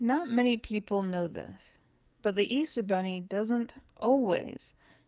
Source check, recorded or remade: remade